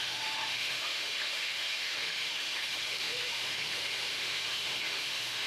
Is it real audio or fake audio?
fake